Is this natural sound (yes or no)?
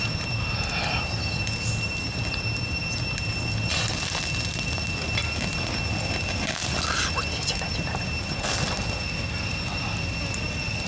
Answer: yes